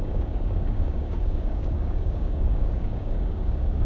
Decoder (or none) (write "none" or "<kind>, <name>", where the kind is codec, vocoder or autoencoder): codec, DAC